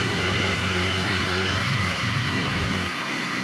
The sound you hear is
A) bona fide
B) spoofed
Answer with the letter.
B